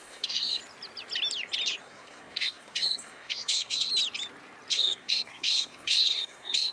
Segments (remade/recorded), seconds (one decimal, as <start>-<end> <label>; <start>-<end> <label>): 0.0-0.6 remade; 0.6-1.8 recorded; 1.8-3.9 remade; 3.9-4.7 recorded; 4.7-6.7 remade